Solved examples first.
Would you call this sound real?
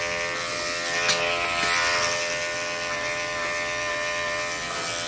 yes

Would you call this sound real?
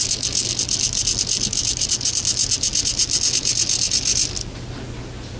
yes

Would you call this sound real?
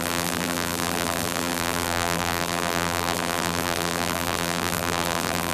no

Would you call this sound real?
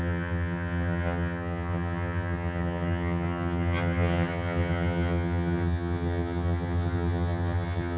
no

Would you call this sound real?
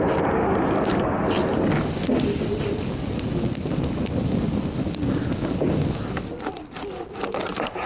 yes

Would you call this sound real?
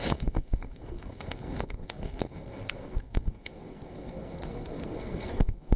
no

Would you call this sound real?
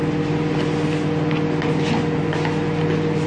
yes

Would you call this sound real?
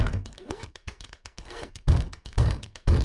no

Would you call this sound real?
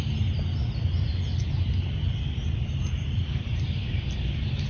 yes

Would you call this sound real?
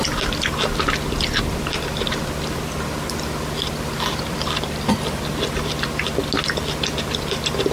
yes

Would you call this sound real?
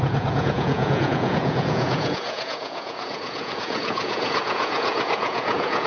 no